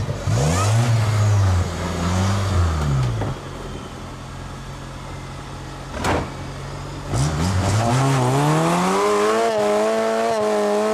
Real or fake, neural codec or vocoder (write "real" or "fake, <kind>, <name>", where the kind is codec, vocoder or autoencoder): real